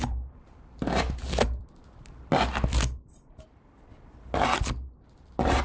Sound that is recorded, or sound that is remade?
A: recorded